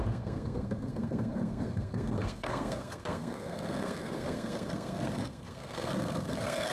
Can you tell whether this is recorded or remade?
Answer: remade